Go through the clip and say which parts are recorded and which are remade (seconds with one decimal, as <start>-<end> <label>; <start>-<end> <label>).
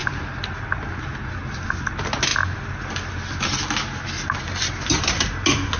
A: 0.0-5.8 recorded